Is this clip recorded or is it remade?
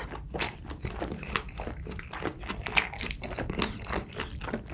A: remade